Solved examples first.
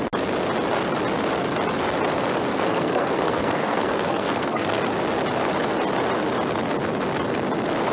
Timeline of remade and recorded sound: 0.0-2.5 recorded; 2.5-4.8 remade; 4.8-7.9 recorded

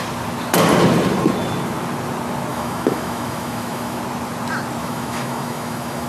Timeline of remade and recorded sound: 0.0-2.5 recorded; 2.5-4.0 remade; 4.0-4.8 recorded; 4.8-6.1 remade

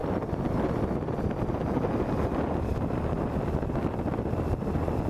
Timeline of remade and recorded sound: 0.0-5.1 recorded

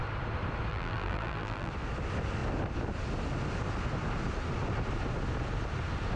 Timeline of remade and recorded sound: 0.0-0.7 recorded; 0.7-1.7 remade; 1.7-6.2 recorded

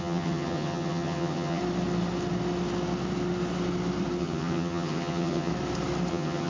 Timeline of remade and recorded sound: 0.0-1.6 remade; 1.6-4.2 recorded; 4.2-5.5 remade; 5.5-6.1 recorded; 6.1-6.5 remade

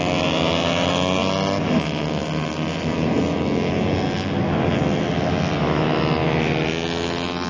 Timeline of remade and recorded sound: 0.0-7.5 recorded

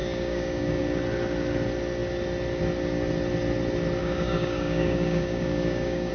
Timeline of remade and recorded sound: 0.0-0.8 remade; 0.8-4.0 recorded; 4.0-6.1 remade

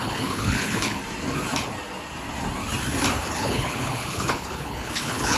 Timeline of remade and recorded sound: 0.0-1.0 remade; 1.0-3.2 recorded; 3.2-5.4 remade